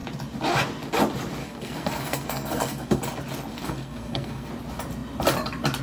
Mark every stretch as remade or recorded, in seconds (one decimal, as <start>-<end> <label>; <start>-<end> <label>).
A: 0.0-1.4 recorded; 1.4-3.0 remade; 3.0-3.5 recorded; 3.5-4.5 remade; 4.5-5.8 recorded